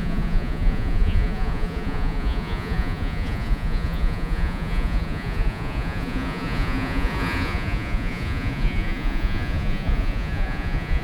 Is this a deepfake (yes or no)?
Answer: yes